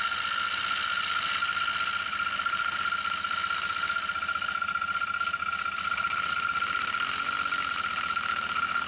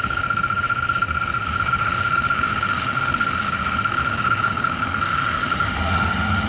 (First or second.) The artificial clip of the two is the second